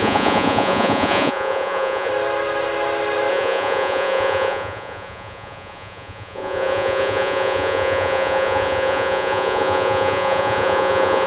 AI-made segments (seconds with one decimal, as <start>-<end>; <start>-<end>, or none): 0.0-2.1; 3.3-11.3